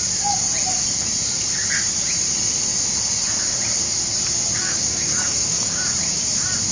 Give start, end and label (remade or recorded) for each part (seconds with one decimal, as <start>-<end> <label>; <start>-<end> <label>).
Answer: 0.0-4.6 recorded; 4.6-5.8 remade; 5.8-6.7 recorded